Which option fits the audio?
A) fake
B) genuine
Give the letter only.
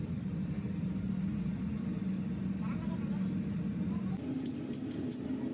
B